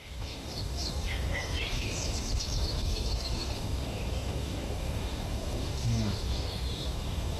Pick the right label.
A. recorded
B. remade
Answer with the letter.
B